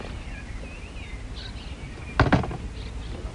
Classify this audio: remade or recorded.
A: recorded